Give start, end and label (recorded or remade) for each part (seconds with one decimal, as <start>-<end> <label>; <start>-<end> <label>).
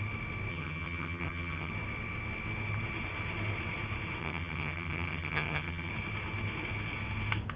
0.0-0.5 recorded; 0.5-1.7 remade; 1.7-4.2 recorded; 4.2-5.9 remade; 5.9-7.6 recorded